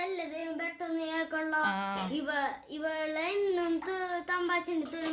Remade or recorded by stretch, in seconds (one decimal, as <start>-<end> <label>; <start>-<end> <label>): 0.0-5.1 recorded